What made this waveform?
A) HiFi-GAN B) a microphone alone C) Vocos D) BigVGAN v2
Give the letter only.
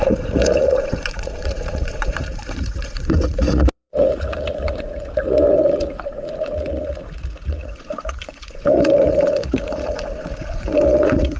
C